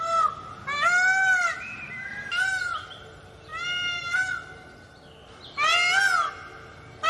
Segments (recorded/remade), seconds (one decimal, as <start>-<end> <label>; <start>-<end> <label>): 0.0-7.1 recorded